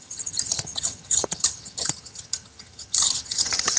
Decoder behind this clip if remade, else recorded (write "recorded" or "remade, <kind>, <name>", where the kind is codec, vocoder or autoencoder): remade, vocoder, HiFi-GAN